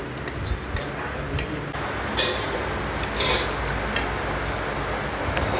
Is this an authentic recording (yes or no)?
yes